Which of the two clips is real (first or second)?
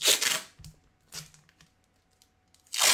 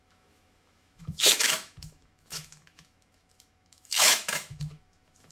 first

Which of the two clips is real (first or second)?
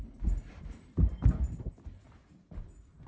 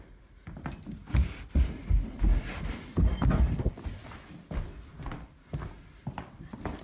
second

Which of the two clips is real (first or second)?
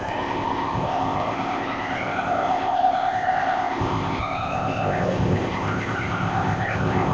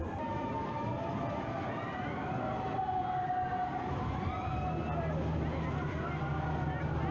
second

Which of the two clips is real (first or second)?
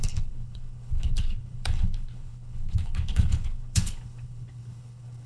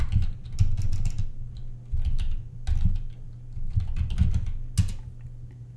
second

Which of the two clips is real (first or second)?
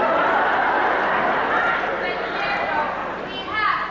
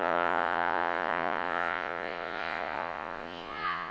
first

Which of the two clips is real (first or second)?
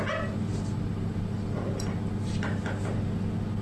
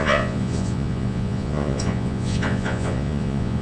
first